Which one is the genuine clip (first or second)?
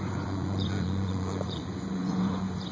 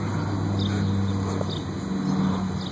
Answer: second